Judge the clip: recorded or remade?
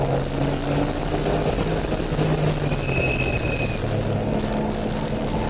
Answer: recorded